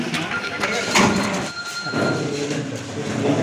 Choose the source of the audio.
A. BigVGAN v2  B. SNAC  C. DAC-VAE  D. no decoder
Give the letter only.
D